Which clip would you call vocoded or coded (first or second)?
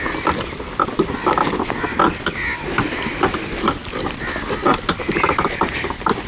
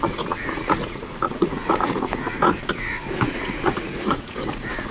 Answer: second